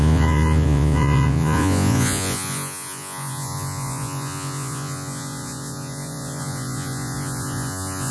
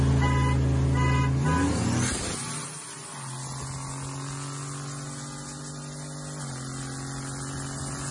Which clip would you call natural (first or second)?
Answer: second